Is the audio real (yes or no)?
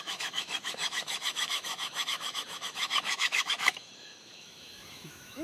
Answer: no